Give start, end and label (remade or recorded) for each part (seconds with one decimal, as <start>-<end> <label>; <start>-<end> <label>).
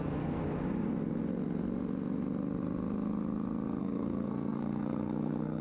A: 0.0-0.4 remade; 0.4-3.8 recorded; 3.8-5.6 remade